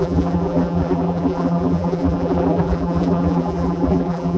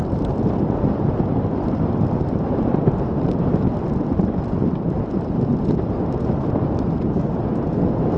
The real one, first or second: second